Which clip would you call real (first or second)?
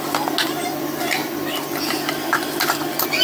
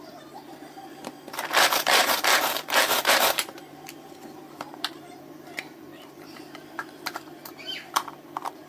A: first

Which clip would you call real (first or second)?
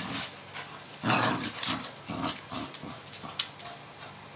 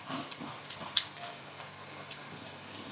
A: first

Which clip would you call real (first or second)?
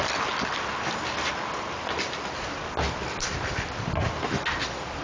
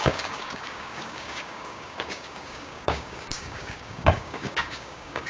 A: first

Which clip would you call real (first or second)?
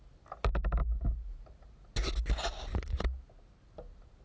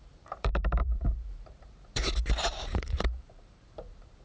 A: first